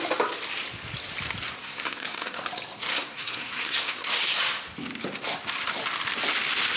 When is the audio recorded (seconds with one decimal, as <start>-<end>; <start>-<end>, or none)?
0.0-1.6; 2.4-2.9; 4.1-6.8